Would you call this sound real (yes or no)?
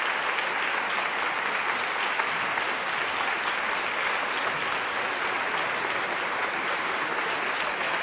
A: yes